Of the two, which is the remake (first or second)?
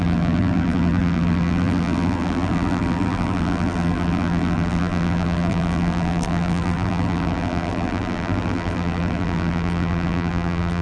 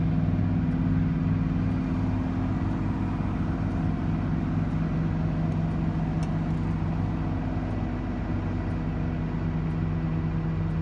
first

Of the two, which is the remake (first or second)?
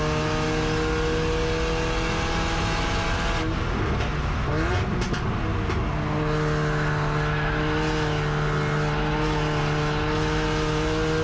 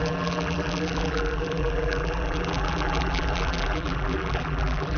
second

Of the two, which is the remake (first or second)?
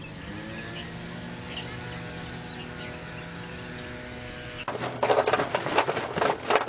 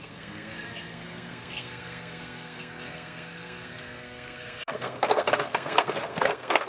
second